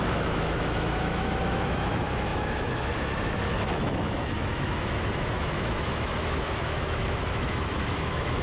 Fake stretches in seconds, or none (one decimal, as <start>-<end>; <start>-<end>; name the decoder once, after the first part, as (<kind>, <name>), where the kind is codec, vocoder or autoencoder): 0.0-8.4 (autoencoder, DAC-VAE)